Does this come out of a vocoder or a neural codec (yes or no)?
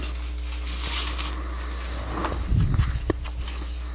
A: no